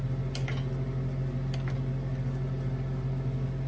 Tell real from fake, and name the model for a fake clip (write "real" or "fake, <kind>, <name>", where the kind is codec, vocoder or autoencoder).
real